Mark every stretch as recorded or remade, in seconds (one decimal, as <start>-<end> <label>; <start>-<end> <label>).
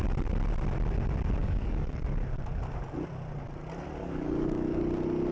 0.0-1.4 recorded; 1.4-2.0 remade; 2.0-4.0 recorded; 4.0-4.8 remade; 4.8-5.3 recorded